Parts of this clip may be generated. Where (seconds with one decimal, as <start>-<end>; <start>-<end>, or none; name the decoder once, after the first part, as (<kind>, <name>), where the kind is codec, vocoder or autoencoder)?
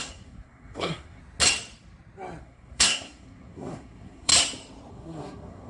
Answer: 0.0-1.2 (codec, SNAC); 2.4-4.3; 4.9-5.7